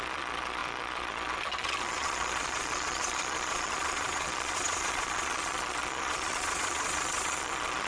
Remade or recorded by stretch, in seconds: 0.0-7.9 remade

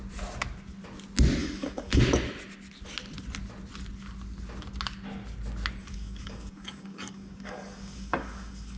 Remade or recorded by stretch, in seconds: 0.0-1.4 recorded; 1.4-2.0 remade; 2.0-5.8 recorded; 5.8-8.8 remade